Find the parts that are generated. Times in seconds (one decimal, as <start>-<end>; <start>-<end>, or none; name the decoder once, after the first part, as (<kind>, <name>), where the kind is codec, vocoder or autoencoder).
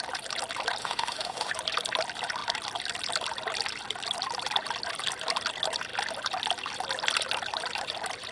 0.8-1.5 (autoencoder, DAC-VAE)